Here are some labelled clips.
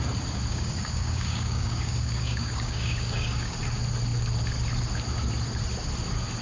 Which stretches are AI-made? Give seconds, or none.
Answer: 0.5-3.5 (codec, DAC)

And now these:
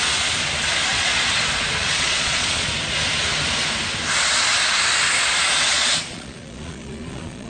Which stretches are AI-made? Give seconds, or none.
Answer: 0.9-1.4 (vocoder, Vocos); 1.8-2.7; 5.7-7.5

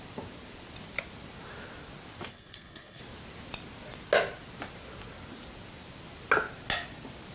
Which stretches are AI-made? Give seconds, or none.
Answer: 2.3-3.0 (codec, SNAC)

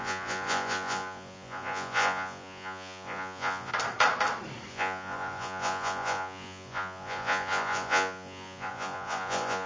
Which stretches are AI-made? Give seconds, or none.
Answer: 0.0-3.7 (vocoder, Vocos); 4.7-9.7

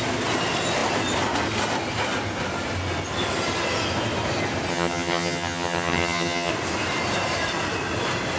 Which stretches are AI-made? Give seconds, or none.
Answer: 4.7-6.5 (vocoder, HiFi-GAN)

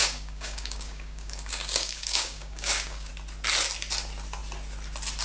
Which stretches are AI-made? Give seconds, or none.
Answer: 0.0-3.1 (codec, DAC)